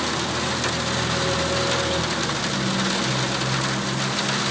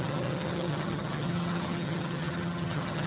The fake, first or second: second